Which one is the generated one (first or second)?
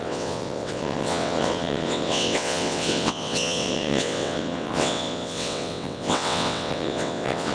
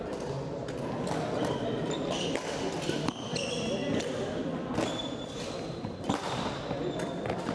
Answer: first